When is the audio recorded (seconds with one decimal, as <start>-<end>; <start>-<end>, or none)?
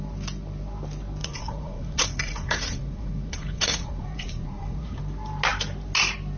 0.0-1.2; 5.0-6.4